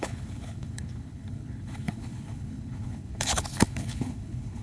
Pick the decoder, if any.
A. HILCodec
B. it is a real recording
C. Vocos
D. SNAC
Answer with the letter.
A